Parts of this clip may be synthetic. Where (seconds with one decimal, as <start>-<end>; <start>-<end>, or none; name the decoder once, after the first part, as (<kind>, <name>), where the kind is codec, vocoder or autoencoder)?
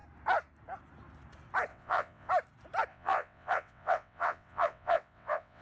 1.7-2.3 (vocoder, WaveNeXt); 2.9-5.6